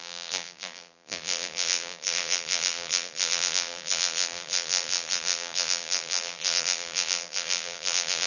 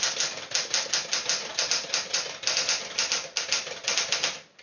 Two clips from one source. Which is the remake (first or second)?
first